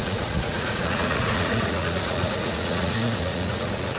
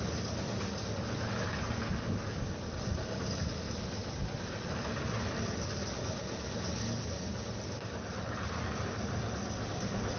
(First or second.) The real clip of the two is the second